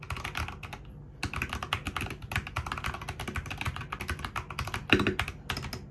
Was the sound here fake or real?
real